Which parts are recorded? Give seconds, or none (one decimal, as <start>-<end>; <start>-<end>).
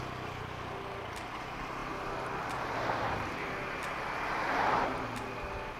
0.0-5.8